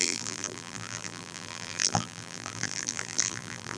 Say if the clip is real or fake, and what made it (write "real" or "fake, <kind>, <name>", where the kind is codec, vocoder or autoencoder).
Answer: fake, vocoder, BigVGAN v2